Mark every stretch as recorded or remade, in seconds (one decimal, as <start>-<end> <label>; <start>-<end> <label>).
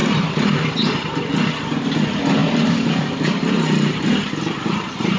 0.0-1.0 remade; 1.0-2.4 recorded; 2.4-5.2 remade